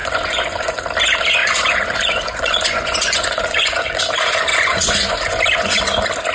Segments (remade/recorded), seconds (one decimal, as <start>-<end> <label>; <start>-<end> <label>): 0.0-0.8 remade; 0.8-1.4 recorded; 1.4-4.0 remade; 4.0-4.5 recorded; 4.5-5.8 remade; 5.8-6.3 recorded